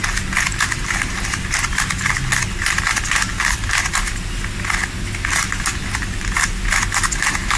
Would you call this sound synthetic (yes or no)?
no